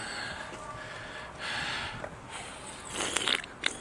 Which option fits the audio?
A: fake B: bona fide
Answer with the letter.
B